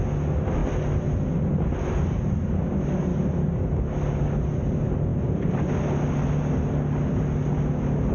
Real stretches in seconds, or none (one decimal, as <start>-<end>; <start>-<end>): 0.0-3.1; 3.8-5.1; 5.6-8.1